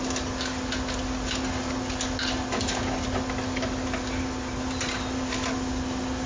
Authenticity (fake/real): real